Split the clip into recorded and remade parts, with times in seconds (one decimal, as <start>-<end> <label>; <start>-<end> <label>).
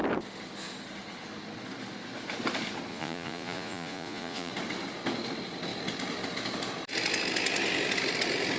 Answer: 0.0-2.9 recorded; 2.9-4.5 remade; 4.5-8.6 recorded